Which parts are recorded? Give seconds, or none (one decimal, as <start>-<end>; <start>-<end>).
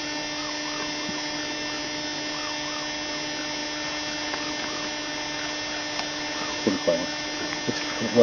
0.0-8.2